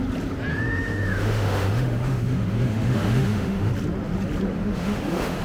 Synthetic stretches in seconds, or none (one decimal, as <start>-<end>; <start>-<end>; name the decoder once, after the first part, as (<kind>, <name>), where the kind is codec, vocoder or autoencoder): 0.5-3.7 (autoencoder, DAC-VAE); 4.5-5.4